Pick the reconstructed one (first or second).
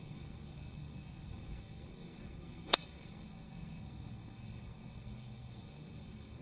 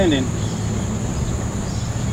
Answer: first